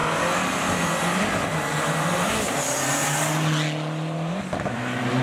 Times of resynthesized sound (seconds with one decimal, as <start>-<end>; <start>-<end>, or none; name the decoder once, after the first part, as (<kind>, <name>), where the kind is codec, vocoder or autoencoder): none